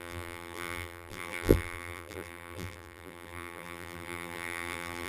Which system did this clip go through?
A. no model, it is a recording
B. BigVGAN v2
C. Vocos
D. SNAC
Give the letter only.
B